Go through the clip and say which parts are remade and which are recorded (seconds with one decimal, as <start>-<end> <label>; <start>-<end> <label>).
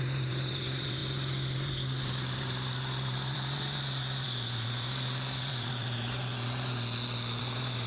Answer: 0.0-6.3 remade; 6.3-7.4 recorded; 7.4-7.9 remade